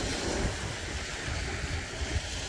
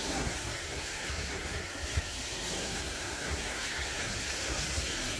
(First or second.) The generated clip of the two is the second